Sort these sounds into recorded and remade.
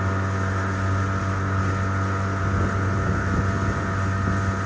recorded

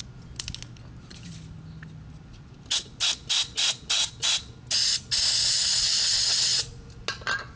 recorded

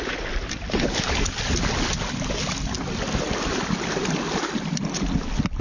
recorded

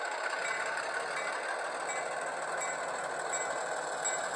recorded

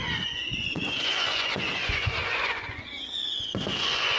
remade